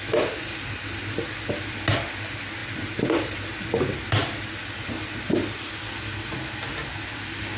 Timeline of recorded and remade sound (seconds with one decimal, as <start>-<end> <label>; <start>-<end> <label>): 0.0-7.6 recorded